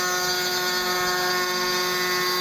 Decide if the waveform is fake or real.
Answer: real